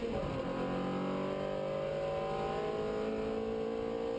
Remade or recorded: recorded